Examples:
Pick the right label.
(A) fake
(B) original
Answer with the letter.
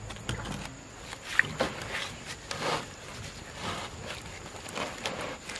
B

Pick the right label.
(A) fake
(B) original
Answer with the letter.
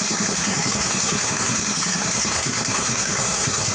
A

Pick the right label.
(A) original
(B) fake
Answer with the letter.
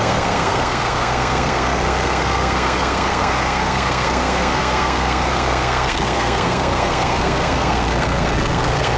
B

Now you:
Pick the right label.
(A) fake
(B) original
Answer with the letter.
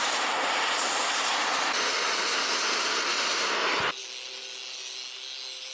B